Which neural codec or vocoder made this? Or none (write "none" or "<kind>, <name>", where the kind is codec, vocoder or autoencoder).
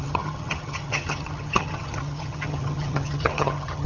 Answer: vocoder, HiFi-GAN